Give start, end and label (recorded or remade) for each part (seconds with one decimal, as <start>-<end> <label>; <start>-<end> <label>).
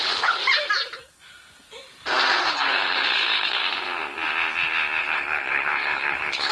0.0-0.4 remade; 0.4-2.4 recorded; 2.4-3.6 remade; 3.6-5.0 recorded; 5.0-6.5 remade